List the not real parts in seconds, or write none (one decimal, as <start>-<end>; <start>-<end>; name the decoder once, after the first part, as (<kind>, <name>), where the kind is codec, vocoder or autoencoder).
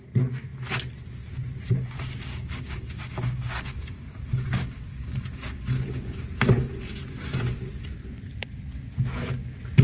2.3-6.2 (codec, DAC)